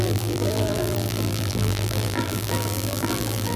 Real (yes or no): no